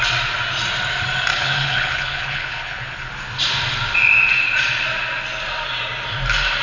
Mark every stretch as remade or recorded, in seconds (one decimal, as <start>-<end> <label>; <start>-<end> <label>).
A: 0.0-1.3 recorded; 1.3-3.1 remade; 3.1-6.6 recorded